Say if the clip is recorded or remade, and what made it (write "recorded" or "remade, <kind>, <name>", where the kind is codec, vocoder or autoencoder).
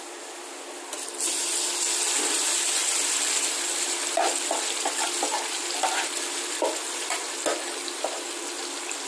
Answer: recorded